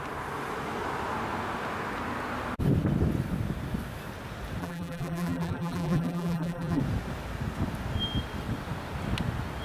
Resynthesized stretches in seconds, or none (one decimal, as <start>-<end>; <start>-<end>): 4.6-6.8